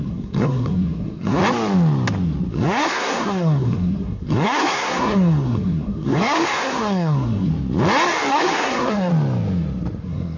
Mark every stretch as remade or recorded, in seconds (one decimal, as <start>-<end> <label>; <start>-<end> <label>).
0.0-1.4 remade; 1.4-2.5 recorded; 2.5-7.5 remade; 7.5-8.3 recorded; 8.3-9.1 remade; 9.1-10.0 recorded; 10.0-10.4 remade